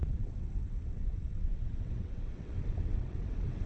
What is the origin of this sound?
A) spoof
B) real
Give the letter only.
A